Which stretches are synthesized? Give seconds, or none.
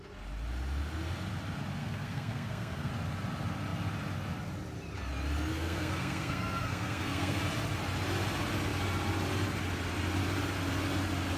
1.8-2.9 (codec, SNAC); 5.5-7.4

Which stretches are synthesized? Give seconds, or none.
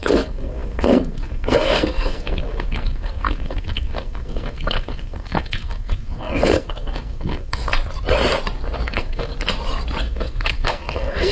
0.0-7.7 (codec, SNAC); 8.9-9.3; 10.0-11.3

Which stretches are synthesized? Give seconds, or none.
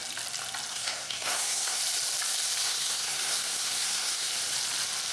0.7-1.8 (codec, SNAC); 2.6-4.3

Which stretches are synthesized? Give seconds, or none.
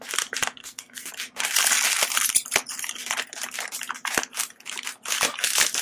0.6-1.1 (codec, SNAC)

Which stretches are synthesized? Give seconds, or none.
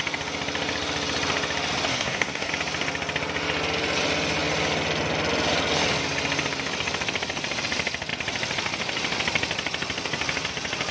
1.9-2.5 (codec, SNAC)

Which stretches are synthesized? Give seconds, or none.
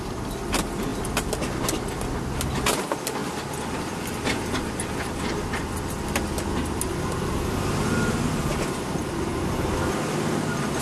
none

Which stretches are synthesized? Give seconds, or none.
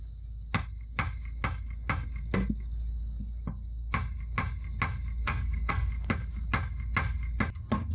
5.2-5.9 (codec, SNAC)